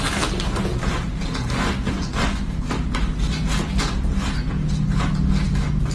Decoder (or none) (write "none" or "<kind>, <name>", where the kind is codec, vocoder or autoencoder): none